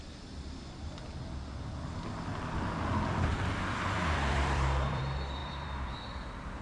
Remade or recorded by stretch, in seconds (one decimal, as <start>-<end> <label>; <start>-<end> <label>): 0.0-3.3 recorded; 3.3-5.0 remade; 5.0-5.4 recorded; 5.4-6.6 remade

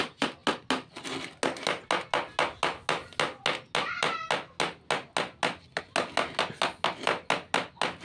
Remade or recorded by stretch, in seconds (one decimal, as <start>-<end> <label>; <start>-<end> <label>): 0.0-8.0 recorded

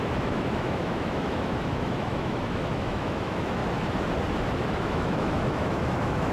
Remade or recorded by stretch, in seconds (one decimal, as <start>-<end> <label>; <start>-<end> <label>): 0.0-3.6 remade; 3.6-4.7 recorded; 4.7-6.3 remade

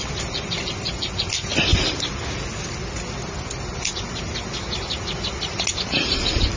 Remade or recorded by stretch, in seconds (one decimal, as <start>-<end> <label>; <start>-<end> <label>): 0.0-6.6 recorded

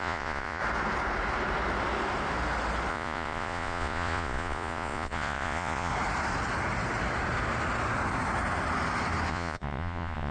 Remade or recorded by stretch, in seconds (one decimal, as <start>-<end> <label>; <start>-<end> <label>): 0.0-0.6 remade; 0.6-2.9 recorded; 2.9-5.9 remade; 5.9-9.3 recorded; 9.3-10.3 remade

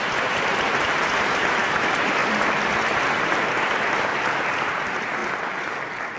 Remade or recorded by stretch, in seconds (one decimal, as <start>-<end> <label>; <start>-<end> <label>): 0.0-2.2 remade; 2.2-3.0 recorded; 3.0-5.2 remade; 5.2-6.2 recorded